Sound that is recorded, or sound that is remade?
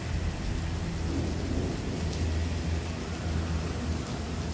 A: recorded